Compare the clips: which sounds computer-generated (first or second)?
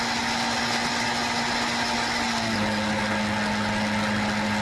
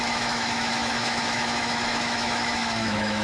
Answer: second